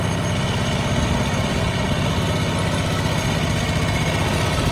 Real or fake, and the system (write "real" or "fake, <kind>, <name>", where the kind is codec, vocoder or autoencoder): real